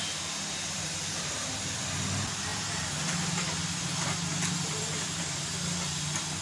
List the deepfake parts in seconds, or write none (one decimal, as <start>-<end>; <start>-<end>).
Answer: none